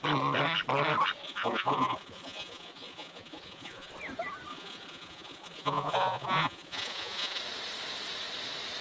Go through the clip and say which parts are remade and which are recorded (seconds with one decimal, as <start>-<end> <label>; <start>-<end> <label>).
0.0-1.2 recorded; 1.2-3.9 remade; 3.9-4.5 recorded; 4.5-7.4 remade; 7.4-8.8 recorded